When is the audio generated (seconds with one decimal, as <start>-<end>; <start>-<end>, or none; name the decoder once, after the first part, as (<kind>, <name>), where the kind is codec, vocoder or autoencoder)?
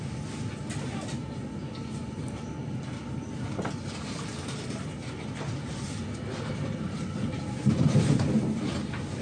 none